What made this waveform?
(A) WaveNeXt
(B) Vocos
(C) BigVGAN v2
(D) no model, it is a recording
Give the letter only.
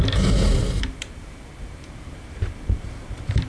C